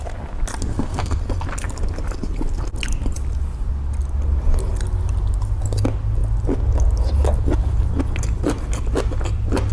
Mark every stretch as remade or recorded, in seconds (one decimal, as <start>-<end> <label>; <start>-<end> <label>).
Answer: 0.0-0.7 recorded; 0.7-1.2 remade; 1.2-9.7 recorded